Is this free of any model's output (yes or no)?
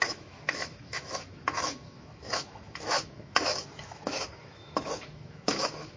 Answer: no